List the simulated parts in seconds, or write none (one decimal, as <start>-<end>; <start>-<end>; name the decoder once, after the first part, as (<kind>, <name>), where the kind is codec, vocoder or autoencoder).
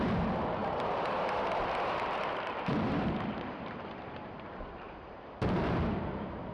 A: 0.0-6.5 (vocoder, BigVGAN v2)